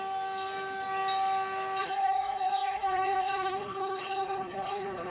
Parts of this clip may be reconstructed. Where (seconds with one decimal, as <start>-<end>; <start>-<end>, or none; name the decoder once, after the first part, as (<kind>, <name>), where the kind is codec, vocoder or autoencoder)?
1.8-5.1 (codec, SNAC)